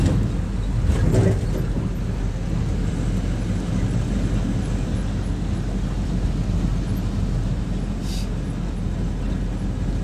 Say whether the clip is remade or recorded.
recorded